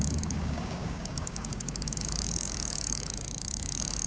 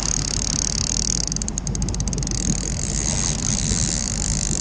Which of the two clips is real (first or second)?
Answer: second